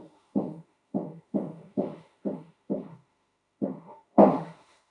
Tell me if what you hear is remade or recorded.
remade